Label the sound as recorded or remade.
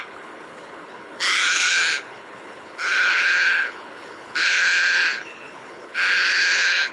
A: remade